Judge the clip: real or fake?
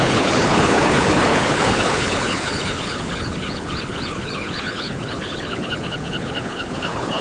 fake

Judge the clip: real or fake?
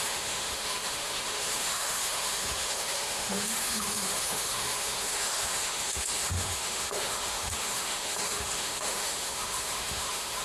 fake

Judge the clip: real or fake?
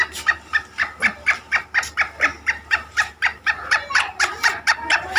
real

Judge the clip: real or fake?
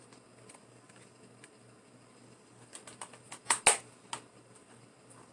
real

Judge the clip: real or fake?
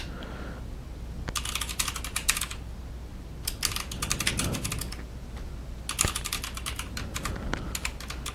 real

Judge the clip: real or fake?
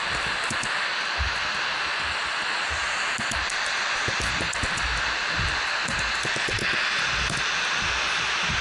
real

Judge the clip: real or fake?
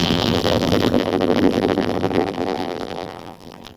fake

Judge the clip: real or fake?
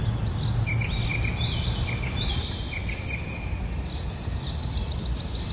real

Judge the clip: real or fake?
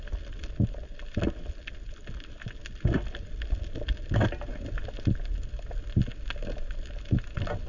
real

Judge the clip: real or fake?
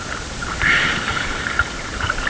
fake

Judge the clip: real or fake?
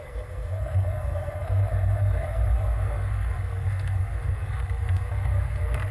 fake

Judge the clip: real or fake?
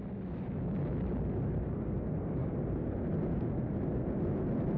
real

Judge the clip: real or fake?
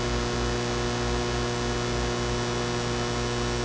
real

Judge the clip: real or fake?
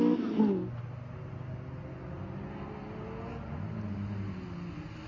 real